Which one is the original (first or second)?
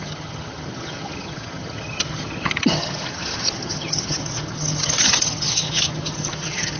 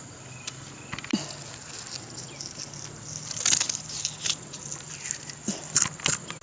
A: second